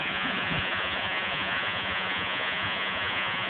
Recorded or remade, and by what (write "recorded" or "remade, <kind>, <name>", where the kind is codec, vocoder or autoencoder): remade, vocoder, Vocos